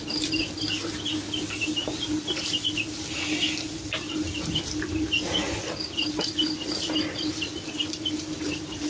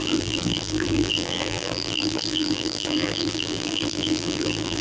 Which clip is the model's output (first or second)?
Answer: second